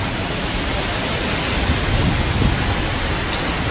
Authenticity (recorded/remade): recorded